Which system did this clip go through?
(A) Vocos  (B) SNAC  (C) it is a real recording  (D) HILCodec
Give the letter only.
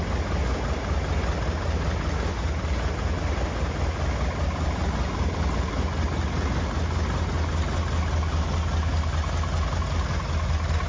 C